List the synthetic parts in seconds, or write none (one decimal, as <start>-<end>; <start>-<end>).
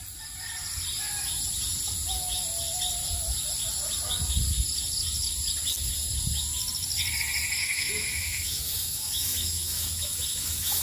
7.6-10.8